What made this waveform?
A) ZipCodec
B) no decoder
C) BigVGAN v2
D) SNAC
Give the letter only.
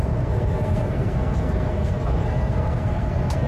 D